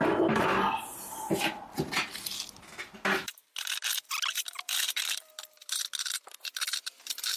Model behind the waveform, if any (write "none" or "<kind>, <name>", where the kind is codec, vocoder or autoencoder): none